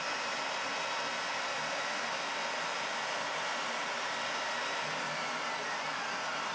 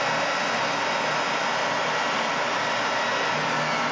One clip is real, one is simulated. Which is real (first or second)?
second